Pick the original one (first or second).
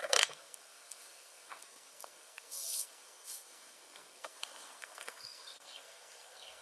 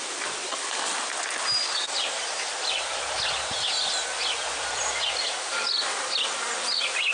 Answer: second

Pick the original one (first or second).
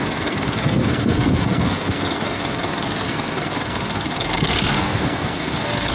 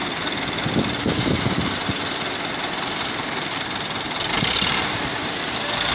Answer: second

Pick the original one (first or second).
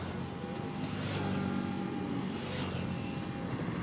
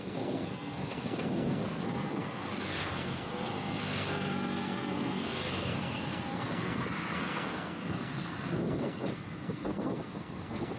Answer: first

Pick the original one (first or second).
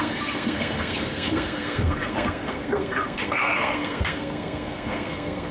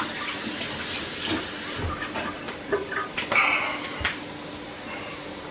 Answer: second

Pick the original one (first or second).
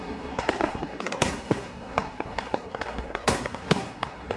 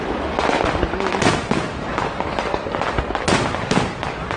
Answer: second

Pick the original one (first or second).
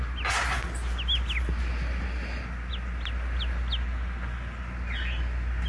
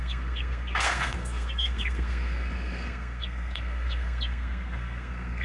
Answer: first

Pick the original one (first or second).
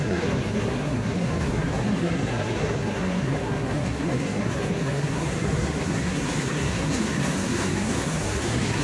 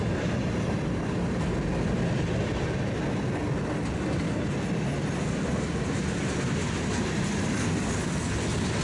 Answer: second